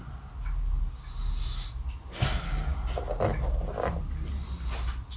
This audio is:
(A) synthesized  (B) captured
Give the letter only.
B